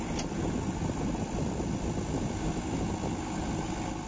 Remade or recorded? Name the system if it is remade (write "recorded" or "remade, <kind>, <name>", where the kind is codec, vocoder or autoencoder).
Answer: recorded